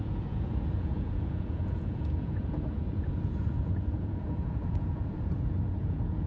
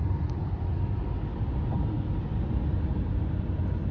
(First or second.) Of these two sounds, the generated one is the first